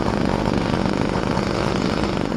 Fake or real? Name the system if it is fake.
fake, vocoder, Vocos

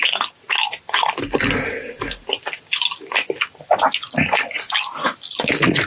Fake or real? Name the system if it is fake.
real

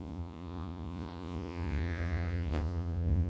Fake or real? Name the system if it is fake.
fake, vocoder, Vocos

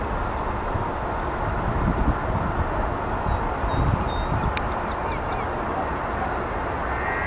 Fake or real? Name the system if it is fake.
real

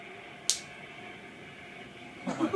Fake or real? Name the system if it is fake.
real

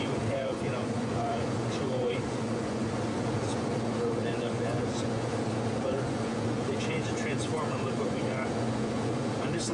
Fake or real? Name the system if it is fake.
fake, vocoder, Vocos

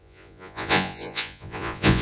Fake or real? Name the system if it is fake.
fake, vocoder, Vocos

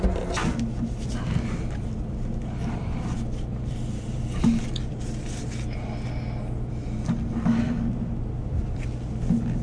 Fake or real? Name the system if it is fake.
real